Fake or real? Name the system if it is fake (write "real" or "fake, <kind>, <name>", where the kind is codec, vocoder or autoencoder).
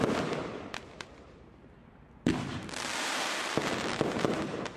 fake, vocoder, BigVGAN v2